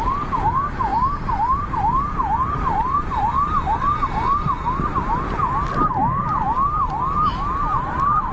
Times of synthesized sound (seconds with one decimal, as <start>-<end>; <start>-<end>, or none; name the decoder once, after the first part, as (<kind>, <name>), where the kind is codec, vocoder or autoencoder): 0.9-1.7 (vocoder, BigVGAN v2)